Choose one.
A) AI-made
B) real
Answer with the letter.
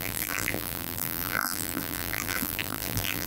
A